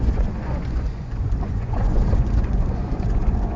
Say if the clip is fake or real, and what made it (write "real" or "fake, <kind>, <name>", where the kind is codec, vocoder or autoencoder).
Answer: fake, vocoder, Vocos